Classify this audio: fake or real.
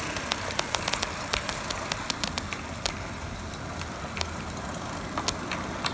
real